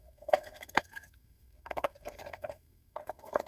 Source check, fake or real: fake